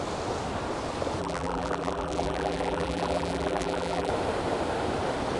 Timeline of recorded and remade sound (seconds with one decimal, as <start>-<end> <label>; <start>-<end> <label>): 0.0-1.2 recorded; 1.2-4.1 remade; 4.1-5.4 recorded